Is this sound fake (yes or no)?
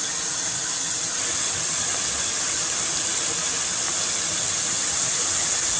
no